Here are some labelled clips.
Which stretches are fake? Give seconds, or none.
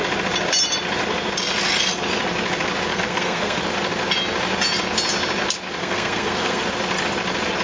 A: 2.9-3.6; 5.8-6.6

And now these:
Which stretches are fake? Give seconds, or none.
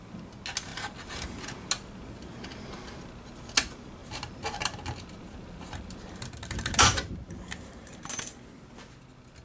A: 4.0-8.1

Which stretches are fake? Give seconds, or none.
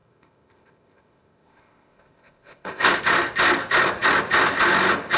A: 0.0-2.9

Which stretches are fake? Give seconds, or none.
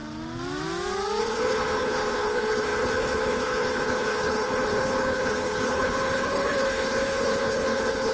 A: 1.2-8.1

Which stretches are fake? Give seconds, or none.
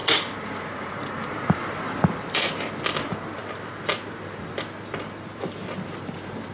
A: 0.0-6.5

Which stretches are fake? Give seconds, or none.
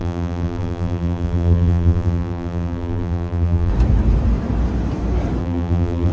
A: 0.0-3.7; 5.4-6.1